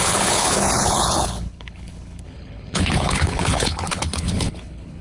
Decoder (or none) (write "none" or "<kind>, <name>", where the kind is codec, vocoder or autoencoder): codec, HILCodec